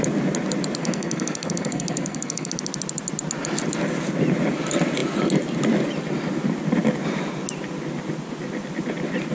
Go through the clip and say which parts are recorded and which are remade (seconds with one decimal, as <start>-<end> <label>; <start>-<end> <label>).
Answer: 0.0-0.8 recorded; 0.8-2.5 remade; 2.5-9.3 recorded